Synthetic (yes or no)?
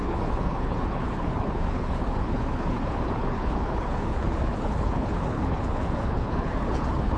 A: yes